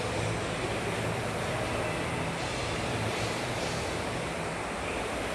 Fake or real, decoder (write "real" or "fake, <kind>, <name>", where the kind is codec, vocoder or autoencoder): real